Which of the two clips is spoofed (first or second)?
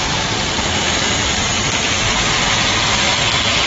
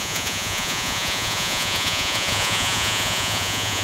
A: second